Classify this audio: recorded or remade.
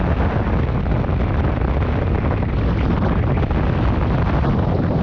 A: recorded